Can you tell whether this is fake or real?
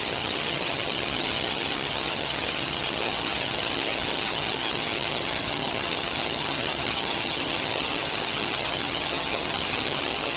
fake